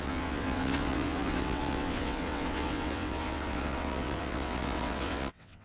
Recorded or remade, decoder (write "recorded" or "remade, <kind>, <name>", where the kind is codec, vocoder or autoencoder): remade, vocoder, WaveNeXt